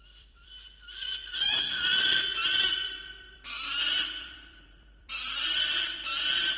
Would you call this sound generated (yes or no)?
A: yes